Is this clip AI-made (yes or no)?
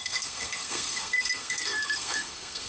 yes